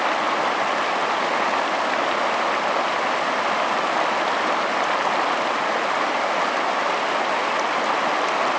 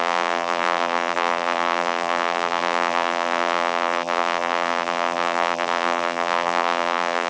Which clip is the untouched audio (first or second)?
first